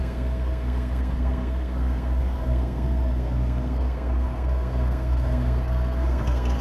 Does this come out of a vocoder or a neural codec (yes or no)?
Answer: yes